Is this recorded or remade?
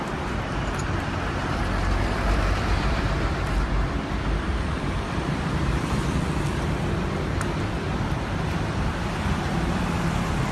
remade